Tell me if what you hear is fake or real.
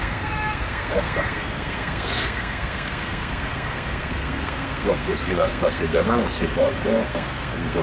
fake